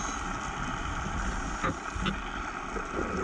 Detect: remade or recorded recorded